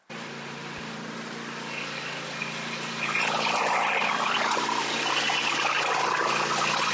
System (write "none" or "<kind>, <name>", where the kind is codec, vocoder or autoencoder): none